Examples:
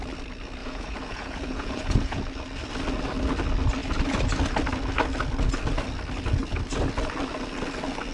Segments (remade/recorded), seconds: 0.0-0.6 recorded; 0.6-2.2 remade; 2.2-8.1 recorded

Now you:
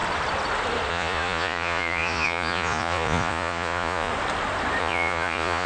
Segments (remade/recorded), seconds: 0.0-0.9 recorded; 0.9-4.1 remade; 4.1-4.8 recorded; 4.8-5.7 remade

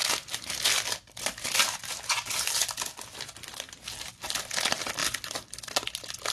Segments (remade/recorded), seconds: 0.0-6.3 recorded

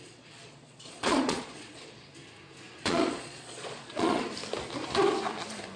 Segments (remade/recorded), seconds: 0.0-2.0 remade; 2.0-2.8 recorded; 2.8-4.2 remade; 4.2-5.8 recorded

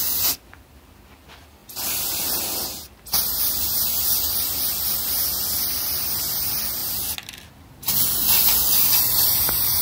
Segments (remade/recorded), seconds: 0.0-1.6 recorded; 1.6-2.4 remade; 2.4-9.8 recorded

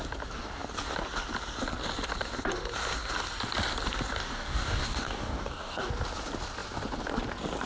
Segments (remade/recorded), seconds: 0.0-4.2 recorded; 4.2-5.9 remade; 5.9-7.7 recorded

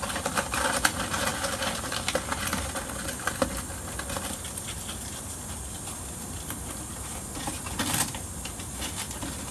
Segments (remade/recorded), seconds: 0.0-7.1 recorded; 7.1-7.6 remade; 7.6-9.5 recorded

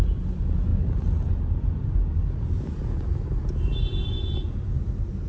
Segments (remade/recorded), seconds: 0.0-3.8 recorded; 3.8-4.6 remade; 4.6-5.3 recorded